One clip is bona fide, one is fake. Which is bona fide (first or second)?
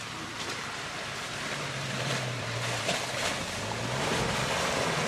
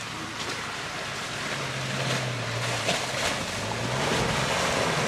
second